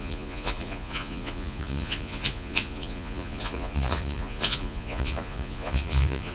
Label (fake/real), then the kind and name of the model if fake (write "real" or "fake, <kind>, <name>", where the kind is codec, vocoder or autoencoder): fake, vocoder, Vocos